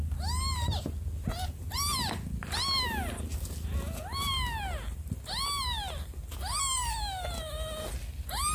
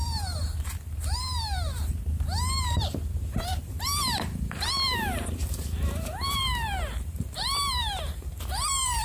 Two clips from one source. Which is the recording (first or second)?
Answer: first